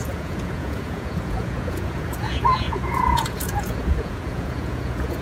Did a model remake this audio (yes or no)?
yes